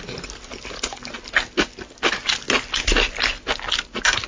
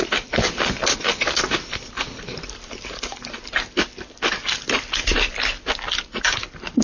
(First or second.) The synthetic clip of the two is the second